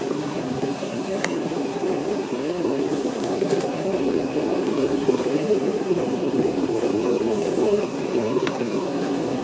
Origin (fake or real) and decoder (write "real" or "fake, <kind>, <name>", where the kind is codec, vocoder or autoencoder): fake, codec, SNAC